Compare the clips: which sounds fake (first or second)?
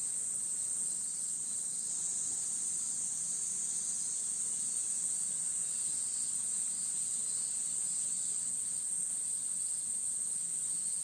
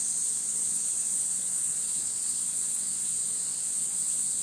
second